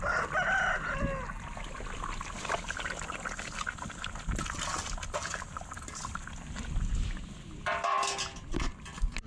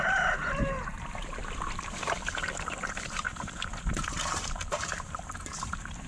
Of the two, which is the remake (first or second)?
second